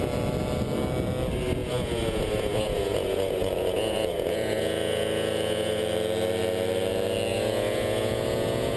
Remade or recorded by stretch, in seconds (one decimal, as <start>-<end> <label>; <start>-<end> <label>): 0.0-1.6 recorded; 1.6-5.8 remade; 5.8-7.3 recorded; 7.3-8.8 remade